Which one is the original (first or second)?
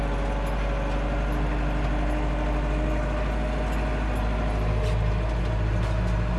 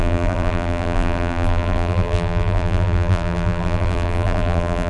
first